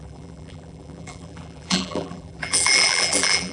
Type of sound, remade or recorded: remade